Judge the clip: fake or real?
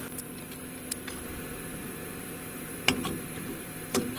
fake